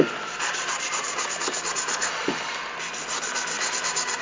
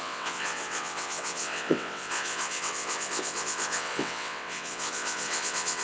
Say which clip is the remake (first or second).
second